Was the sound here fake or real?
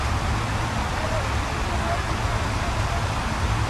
real